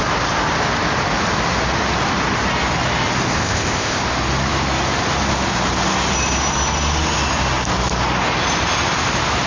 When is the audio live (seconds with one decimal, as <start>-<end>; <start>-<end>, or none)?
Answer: 0.0-3.4; 4.0-9.5